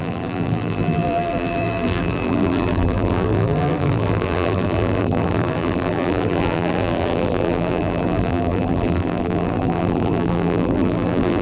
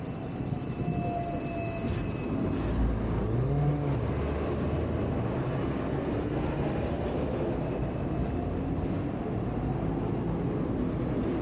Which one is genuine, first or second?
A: second